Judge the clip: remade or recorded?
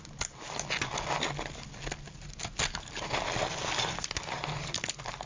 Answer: recorded